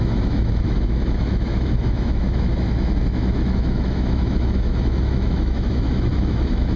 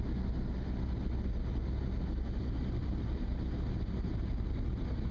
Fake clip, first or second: first